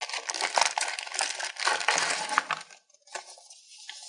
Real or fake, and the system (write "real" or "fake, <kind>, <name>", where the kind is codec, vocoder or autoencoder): real